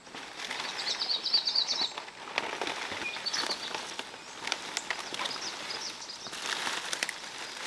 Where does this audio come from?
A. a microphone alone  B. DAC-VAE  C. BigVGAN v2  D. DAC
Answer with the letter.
A